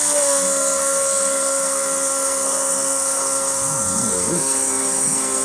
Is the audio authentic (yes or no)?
no